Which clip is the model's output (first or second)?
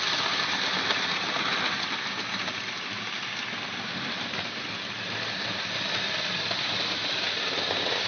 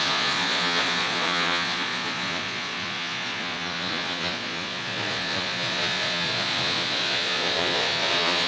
second